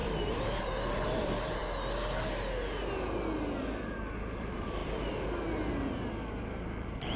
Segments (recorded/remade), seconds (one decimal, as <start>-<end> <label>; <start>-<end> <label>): 0.0-1.6 remade; 1.6-3.6 recorded; 3.6-4.8 remade; 4.8-5.9 recorded; 5.9-7.2 remade